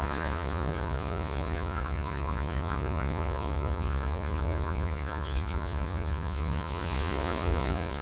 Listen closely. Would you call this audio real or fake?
fake